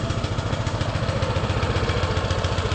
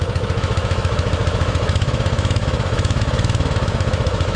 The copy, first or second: second